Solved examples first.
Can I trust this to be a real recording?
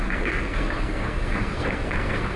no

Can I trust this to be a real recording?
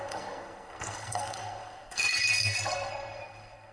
no